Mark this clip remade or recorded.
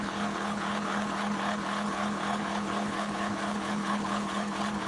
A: remade